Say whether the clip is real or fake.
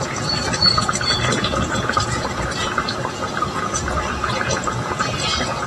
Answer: fake